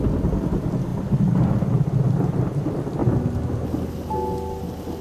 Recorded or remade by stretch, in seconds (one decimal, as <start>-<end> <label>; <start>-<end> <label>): 0.0-5.0 recorded

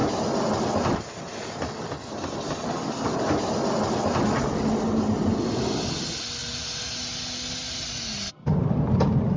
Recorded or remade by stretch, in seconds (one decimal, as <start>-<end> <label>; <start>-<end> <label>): 0.0-9.4 recorded

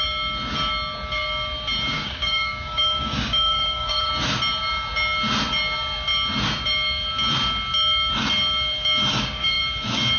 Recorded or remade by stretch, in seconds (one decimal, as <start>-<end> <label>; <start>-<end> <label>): 0.0-1.9 recorded; 1.9-4.1 remade; 4.1-9.1 recorded; 9.1-9.6 remade; 9.6-10.2 recorded